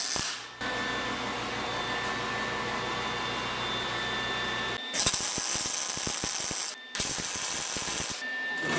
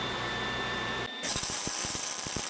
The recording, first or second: first